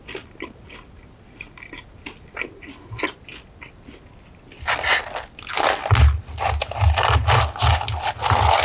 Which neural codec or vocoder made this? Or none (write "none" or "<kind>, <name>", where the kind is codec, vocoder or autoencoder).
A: none